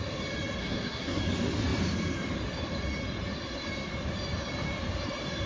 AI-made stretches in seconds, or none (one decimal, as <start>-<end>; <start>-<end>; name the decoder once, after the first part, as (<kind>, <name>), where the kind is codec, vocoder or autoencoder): 0.6-1.2 (codec, SNAC)